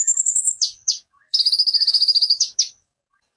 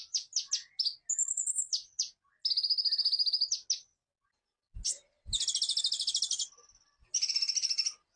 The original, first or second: second